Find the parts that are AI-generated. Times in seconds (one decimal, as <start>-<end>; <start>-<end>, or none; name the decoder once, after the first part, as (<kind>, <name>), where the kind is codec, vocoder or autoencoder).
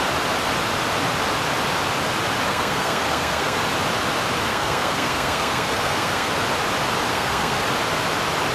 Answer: 2.5-3.6 (codec, SNAC); 4.5-6.3; 7.1-7.7